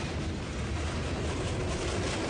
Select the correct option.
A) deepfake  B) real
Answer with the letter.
B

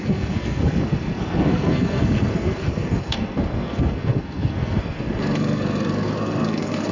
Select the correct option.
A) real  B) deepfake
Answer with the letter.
B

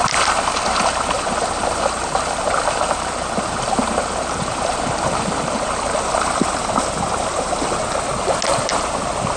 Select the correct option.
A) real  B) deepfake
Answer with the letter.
A